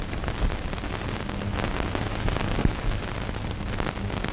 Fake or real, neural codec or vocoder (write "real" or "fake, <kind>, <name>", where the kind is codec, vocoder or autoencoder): real